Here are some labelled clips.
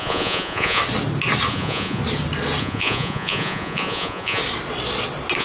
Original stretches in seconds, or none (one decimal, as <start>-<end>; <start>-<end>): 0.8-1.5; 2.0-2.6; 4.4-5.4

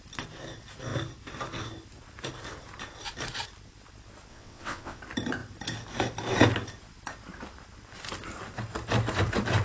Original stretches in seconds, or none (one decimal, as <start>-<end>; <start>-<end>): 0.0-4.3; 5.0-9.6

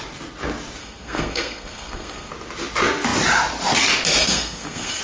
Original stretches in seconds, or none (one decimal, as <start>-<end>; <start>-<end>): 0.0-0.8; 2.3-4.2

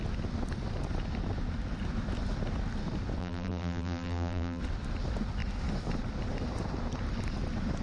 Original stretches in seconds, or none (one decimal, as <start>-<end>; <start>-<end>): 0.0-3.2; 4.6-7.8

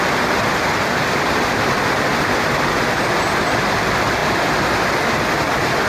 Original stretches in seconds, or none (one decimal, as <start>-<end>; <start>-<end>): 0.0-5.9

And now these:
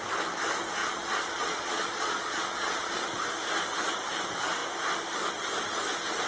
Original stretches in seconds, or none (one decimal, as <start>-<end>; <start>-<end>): 0.0-0.8; 3.2-6.3

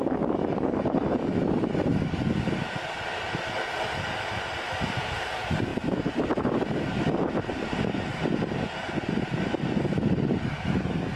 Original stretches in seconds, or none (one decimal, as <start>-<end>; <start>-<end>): 0.0-11.2

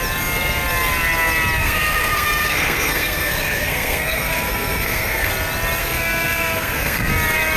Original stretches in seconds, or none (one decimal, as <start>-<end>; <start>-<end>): 0.0-1.6; 5.3-5.8; 7.1-7.6